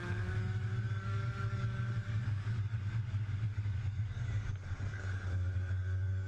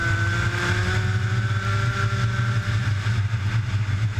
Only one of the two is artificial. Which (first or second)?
first